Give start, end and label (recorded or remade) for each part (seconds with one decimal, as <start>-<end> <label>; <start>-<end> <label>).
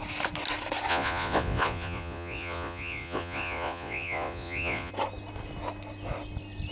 0.0-0.9 recorded; 0.9-4.9 remade; 4.9-6.7 recorded